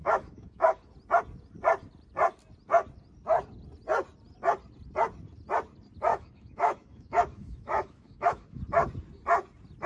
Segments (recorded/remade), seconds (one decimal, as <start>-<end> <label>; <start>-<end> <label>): 0.0-0.9 remade; 0.9-6.1 recorded; 6.1-8.6 remade; 8.6-9.9 recorded

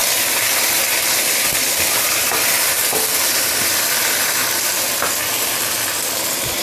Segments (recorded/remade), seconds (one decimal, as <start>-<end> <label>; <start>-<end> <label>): 0.0-6.6 recorded

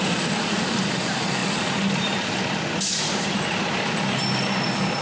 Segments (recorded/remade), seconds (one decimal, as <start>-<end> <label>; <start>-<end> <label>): 0.0-5.0 recorded

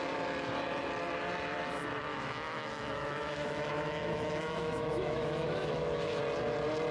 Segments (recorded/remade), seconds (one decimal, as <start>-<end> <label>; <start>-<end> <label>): 0.0-2.1 recorded; 2.1-6.2 remade; 6.2-6.9 recorded

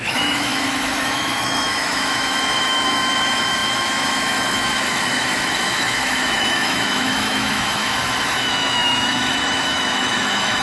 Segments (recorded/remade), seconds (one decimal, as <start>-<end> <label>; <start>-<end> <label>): 0.0-10.6 remade

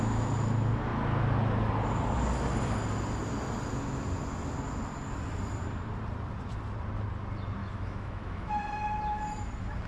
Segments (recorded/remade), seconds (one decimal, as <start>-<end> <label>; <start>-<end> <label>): 0.0-7.6 recorded; 7.6-8.5 remade; 8.5-9.9 recorded

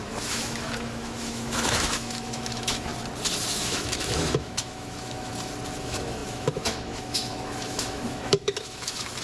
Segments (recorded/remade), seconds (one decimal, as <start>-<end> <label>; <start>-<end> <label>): 0.0-2.9 remade; 2.9-3.5 recorded; 3.5-5.3 remade; 5.3-5.8 recorded; 5.8-9.2 remade